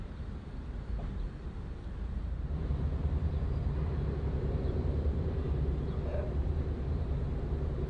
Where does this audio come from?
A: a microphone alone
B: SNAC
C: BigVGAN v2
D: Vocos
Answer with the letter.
C